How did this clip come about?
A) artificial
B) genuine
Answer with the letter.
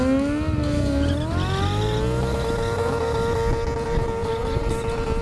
B